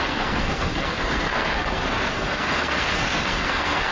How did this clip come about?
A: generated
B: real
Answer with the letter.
A